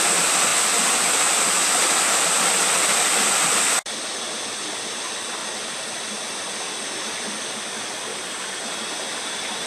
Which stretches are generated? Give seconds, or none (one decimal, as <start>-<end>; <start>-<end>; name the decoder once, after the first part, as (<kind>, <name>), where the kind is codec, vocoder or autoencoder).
8.1-8.8 (vocoder, BigVGAN v2)